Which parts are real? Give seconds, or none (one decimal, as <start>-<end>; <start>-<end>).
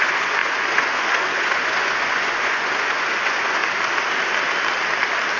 3.6-5.4